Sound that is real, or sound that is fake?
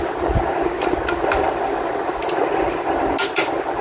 real